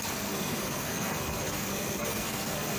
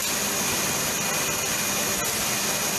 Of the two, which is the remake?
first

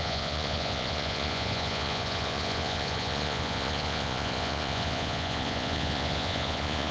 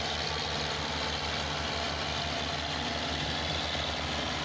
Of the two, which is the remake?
first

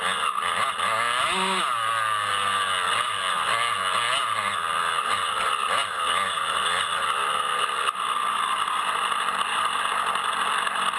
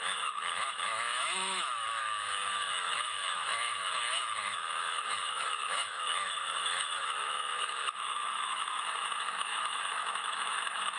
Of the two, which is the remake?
second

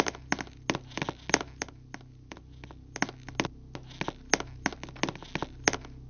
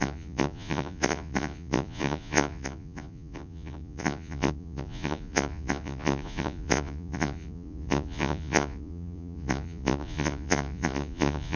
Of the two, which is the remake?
second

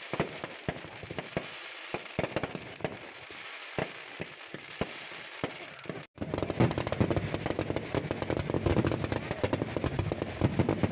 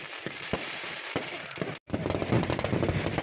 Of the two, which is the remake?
second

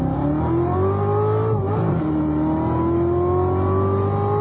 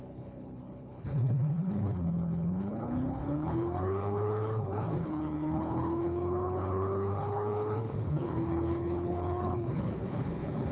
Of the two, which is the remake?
second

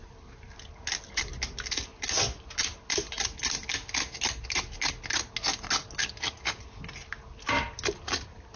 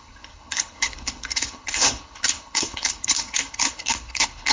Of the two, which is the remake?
second